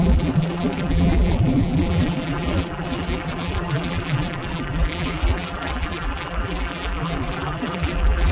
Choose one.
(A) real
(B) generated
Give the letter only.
B